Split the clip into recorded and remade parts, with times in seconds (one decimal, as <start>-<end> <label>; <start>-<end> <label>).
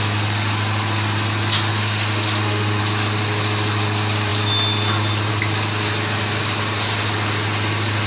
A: 0.0-1.7 recorded; 1.7-2.8 remade; 2.8-8.1 recorded